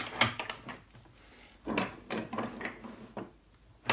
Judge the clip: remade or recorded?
recorded